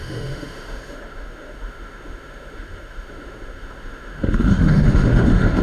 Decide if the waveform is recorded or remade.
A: remade